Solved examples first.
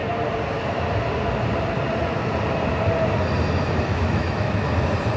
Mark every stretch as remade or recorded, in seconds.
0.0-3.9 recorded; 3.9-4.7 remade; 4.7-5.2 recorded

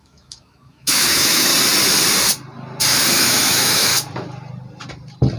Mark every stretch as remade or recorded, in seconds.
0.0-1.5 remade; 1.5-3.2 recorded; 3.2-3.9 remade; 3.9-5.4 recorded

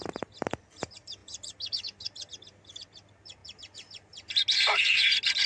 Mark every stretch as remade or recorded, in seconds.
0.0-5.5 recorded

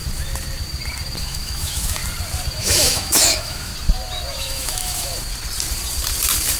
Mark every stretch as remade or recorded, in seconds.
0.0-1.2 recorded; 1.2-2.0 remade; 2.0-2.6 recorded; 2.6-3.7 remade; 3.7-4.4 recorded; 4.4-5.1 remade; 5.1-6.6 recorded